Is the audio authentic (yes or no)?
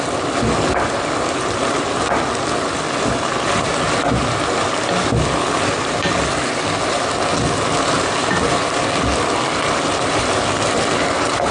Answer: yes